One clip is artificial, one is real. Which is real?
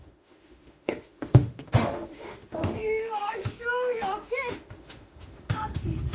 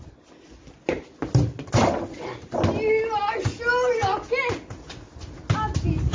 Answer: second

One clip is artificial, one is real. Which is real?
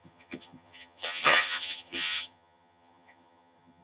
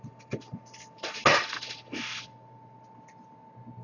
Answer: second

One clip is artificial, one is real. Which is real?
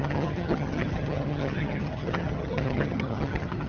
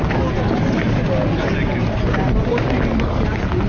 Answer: second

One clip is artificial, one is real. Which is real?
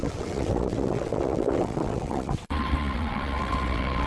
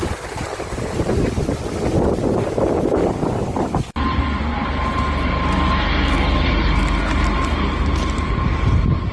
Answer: second